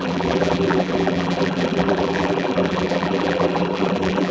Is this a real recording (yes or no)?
no